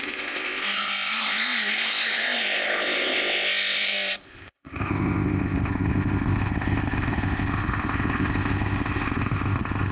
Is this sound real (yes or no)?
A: no